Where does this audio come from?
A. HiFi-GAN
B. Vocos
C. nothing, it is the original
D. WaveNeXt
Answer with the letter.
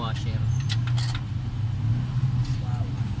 C